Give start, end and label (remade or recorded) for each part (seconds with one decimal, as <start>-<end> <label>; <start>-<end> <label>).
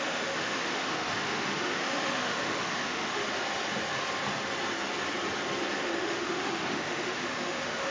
0.0-3.2 remade; 3.2-5.8 recorded; 5.8-7.9 remade